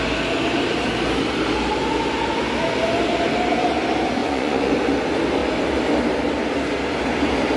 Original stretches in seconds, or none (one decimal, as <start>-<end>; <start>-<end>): 0.0-4.2; 4.7-7.6